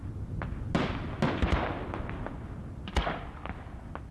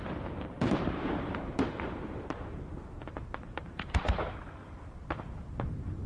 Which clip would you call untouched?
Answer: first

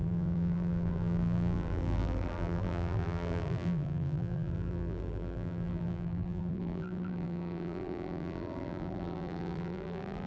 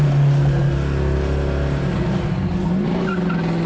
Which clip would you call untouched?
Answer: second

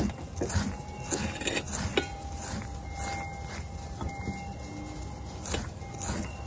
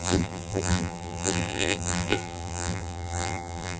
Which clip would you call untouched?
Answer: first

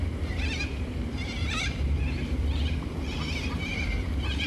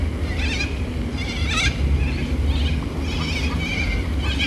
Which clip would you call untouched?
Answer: second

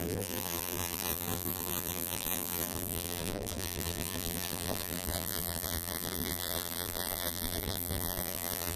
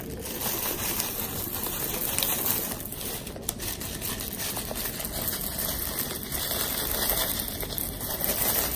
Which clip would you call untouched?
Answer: second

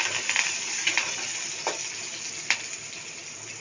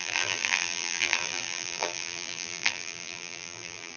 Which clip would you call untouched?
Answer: first